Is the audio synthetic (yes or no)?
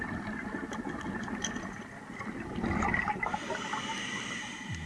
no